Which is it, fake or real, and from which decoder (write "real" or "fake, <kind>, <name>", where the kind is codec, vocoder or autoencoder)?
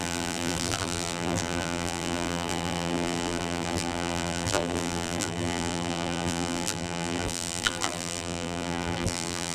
fake, vocoder, BigVGAN v2